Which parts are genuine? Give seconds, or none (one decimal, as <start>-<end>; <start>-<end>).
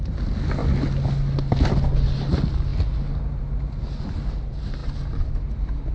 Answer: 0.0-5.9